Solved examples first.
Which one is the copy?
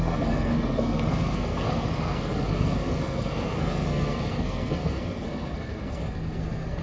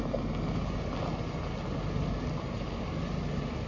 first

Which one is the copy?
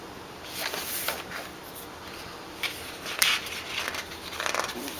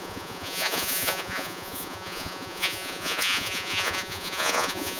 second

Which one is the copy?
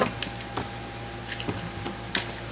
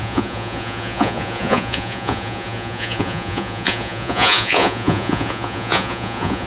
second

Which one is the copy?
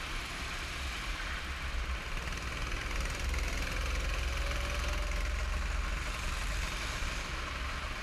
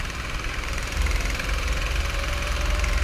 second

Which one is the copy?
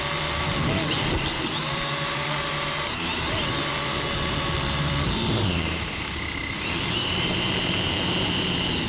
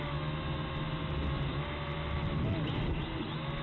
first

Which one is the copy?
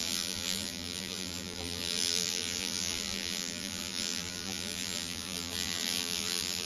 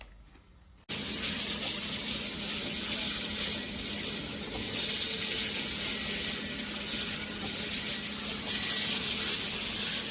first